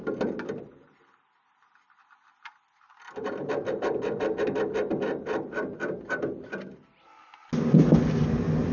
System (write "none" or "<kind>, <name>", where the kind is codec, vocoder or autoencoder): none